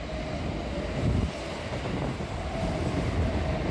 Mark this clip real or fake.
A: real